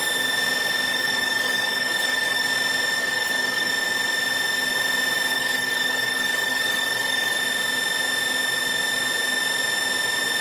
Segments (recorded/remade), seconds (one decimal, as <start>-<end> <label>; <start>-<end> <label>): 0.0-0.9 recorded; 0.9-2.5 remade; 2.5-3.0 recorded; 3.0-3.7 remade; 3.7-5.3 recorded; 5.3-7.4 remade; 7.4-10.4 recorded